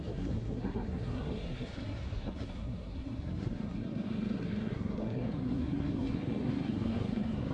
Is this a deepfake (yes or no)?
yes